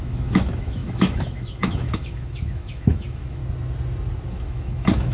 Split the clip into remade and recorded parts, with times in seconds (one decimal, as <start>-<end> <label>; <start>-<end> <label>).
0.0-3.4 remade; 3.4-4.3 recorded; 4.3-5.1 remade